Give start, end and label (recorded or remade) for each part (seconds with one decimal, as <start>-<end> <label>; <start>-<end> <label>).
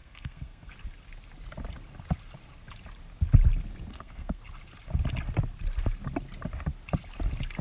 0.0-0.7 remade; 0.7-3.9 recorded; 3.9-4.4 remade; 4.4-7.6 recorded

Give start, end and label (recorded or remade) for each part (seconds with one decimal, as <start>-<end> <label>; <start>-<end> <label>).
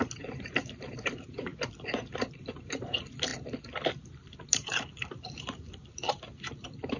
0.0-1.5 remade; 1.5-2.2 recorded; 2.2-3.3 remade; 3.3-3.9 recorded; 3.9-7.0 remade